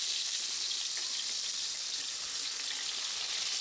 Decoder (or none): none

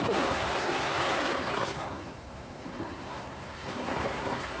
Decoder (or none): codec, SNAC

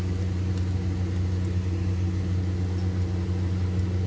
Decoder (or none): none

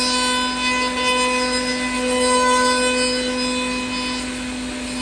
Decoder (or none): none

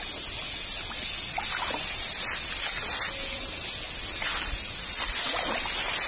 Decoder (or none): none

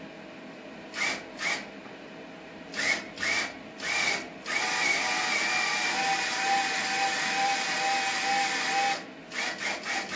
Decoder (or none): none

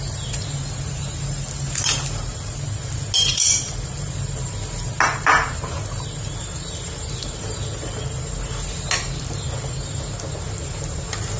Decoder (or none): none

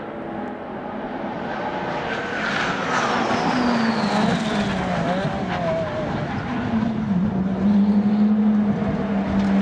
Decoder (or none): none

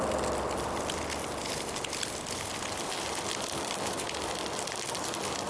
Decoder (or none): none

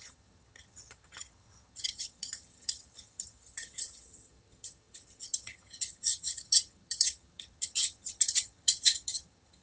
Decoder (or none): vocoder, HiFi-GAN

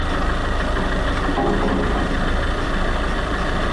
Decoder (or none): none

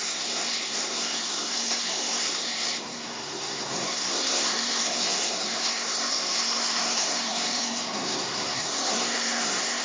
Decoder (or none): codec, SNAC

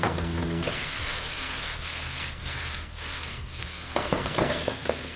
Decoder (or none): codec, SNAC